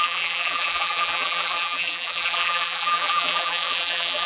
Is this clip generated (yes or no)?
yes